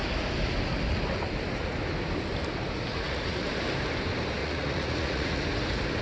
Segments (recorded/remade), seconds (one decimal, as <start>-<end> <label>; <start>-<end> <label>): 0.0-2.9 recorded; 2.9-3.5 remade; 3.5-4.4 recorded; 4.4-5.4 remade; 5.4-6.0 recorded